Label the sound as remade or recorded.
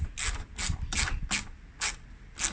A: recorded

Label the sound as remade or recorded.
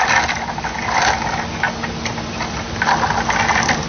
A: recorded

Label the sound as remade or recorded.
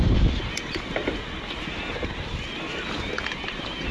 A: recorded